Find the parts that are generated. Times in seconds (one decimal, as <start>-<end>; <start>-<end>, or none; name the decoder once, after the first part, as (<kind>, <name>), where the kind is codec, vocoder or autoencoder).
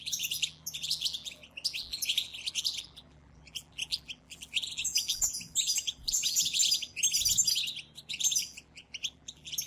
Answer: 0.0-7.0 (vocoder, BigVGAN v2); 8.1-9.7